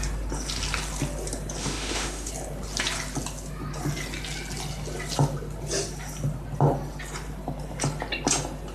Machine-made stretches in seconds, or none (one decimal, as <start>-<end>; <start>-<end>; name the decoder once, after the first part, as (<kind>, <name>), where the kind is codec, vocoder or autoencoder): 1.6-2.3 (autoencoder, DAC-VAE)